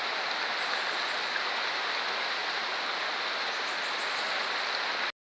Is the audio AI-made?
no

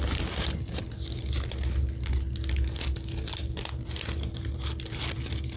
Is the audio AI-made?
no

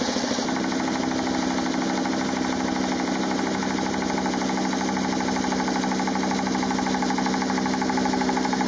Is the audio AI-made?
no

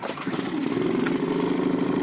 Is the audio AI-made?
no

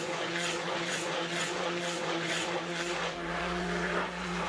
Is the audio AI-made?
yes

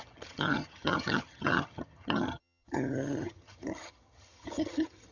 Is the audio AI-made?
yes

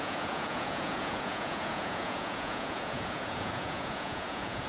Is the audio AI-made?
yes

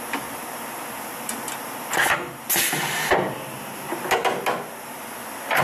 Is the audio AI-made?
no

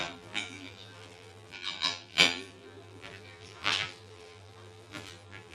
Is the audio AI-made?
yes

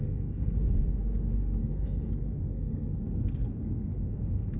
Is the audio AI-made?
yes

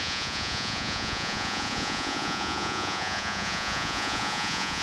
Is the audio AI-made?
yes